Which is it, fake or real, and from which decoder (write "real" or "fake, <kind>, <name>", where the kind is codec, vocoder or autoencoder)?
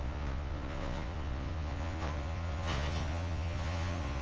fake, vocoder, Vocos